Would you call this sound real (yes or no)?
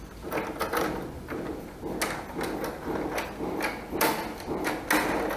yes